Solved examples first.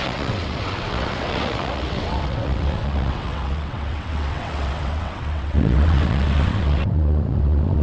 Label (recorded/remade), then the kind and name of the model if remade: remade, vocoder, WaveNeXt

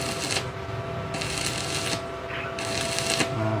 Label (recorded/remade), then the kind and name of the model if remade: recorded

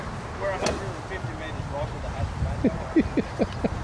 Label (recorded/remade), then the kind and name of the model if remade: recorded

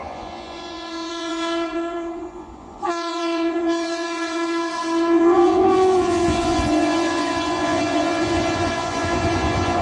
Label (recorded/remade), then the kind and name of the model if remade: remade, vocoder, Vocos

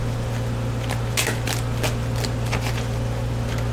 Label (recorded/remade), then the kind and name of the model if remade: recorded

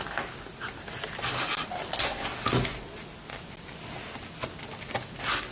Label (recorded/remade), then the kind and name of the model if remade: recorded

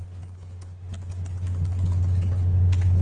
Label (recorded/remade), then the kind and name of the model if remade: recorded